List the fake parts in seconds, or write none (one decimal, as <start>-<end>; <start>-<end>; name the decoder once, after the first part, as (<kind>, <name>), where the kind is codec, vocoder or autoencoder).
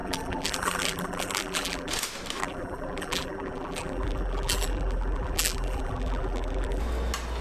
0.0-1.9 (vocoder, BigVGAN v2); 2.4-6.8